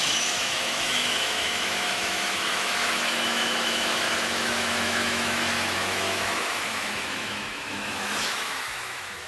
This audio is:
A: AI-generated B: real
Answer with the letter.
A